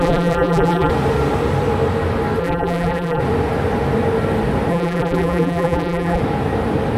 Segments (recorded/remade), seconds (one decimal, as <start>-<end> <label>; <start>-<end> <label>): 0.0-0.9 remade; 0.9-2.4 recorded; 2.4-3.2 remade; 3.2-4.7 recorded; 4.7-6.2 remade; 6.2-7.0 recorded